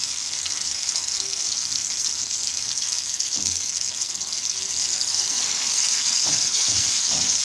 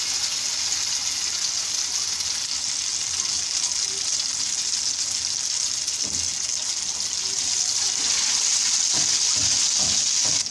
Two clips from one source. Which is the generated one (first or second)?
first